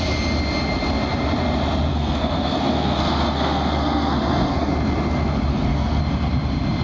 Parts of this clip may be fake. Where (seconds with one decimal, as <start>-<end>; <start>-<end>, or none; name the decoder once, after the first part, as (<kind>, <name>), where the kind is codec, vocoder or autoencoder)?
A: 1.9-4.7 (codec, SNAC); 5.5-6.0